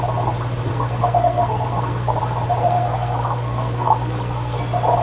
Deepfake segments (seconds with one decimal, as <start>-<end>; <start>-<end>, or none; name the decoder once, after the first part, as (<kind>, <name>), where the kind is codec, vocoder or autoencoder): 0.7-2.2 (codec, SNAC); 2.6-4.6